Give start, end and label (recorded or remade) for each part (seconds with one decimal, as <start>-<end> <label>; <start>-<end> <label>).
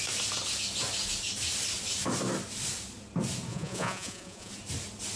0.0-3.5 recorded; 3.5-4.5 remade; 4.5-5.2 recorded